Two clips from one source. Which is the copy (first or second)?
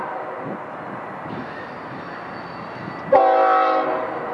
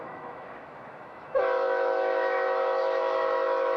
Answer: second